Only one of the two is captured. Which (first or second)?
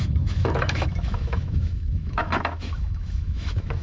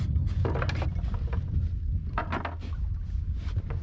second